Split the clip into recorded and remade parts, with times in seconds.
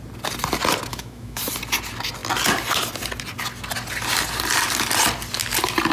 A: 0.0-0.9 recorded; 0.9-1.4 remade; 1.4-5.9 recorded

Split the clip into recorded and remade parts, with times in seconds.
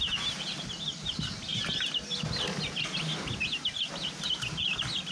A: 0.0-5.1 recorded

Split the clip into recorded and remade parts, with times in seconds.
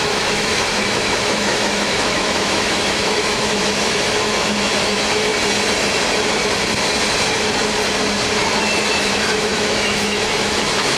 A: 0.0-5.3 remade; 5.3-8.9 recorded; 8.9-11.0 remade